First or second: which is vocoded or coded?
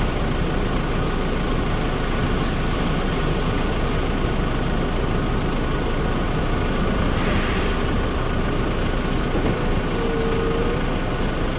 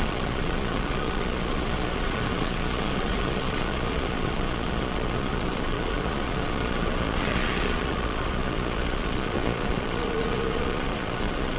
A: second